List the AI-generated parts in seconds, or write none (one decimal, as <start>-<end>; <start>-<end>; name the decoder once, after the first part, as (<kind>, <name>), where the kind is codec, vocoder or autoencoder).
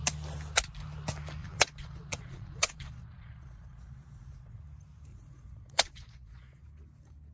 1.4-4.6 (vocoder, Vocos); 5.1-6.6